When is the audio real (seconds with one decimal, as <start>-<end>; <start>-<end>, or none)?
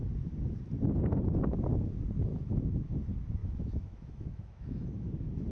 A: 0.0-2.3; 2.9-3.4; 5.1-5.5